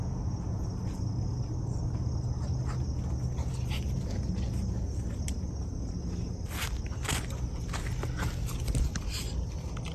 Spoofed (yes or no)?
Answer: no